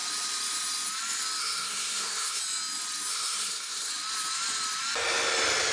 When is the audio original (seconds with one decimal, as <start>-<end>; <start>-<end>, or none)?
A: 0.0-1.4; 2.4-3.1; 3.9-5.7